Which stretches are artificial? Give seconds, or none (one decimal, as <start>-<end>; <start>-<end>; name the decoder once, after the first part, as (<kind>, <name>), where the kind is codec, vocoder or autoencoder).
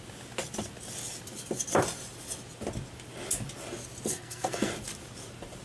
4.1-4.7 (codec, SNAC)